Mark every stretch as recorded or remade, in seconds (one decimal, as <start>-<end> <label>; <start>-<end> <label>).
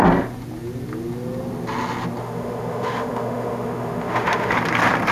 0.0-2.2 recorded; 2.2-4.5 remade; 4.5-5.1 recorded